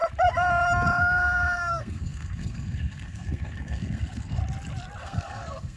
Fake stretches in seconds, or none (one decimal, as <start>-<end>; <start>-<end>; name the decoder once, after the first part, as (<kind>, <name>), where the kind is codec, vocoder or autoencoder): 1.0-4.4 (codec, SNAC); 5.0-5.8